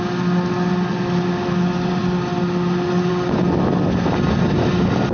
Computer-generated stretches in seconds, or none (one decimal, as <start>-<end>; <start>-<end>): none